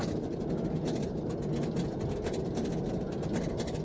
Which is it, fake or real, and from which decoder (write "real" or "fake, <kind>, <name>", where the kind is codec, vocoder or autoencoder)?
real